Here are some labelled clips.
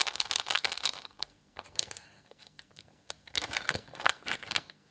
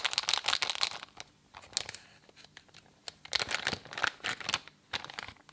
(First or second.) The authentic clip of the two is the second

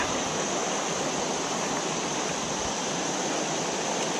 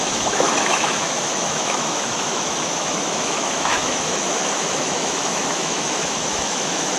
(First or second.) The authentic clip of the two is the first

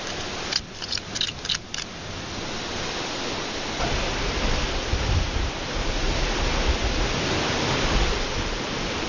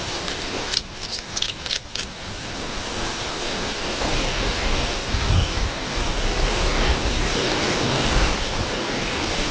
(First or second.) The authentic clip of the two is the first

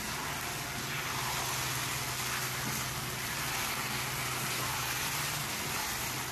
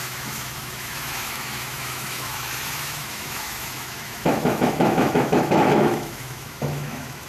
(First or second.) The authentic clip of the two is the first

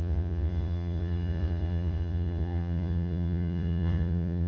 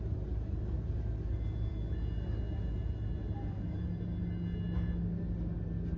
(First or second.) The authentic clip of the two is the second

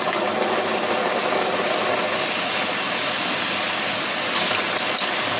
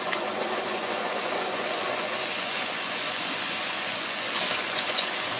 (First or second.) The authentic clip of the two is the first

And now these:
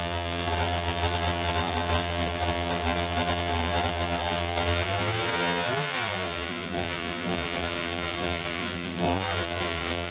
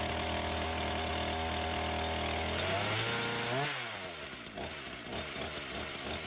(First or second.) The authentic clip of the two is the second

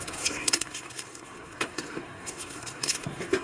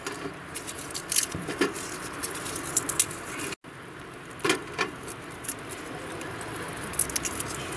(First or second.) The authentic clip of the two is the second